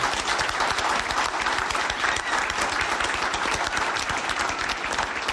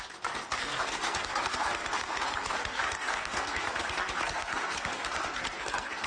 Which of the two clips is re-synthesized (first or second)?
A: second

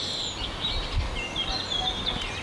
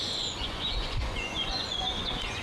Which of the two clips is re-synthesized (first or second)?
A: second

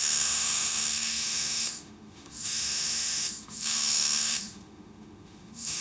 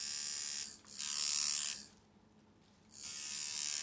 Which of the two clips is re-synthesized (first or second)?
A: first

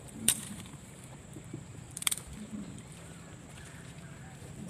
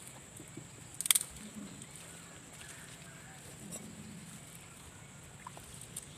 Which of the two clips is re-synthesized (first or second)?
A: first